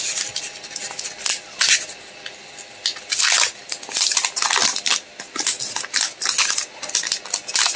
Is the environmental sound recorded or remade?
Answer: recorded